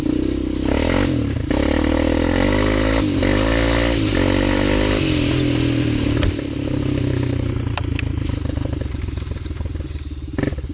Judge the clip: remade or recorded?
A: recorded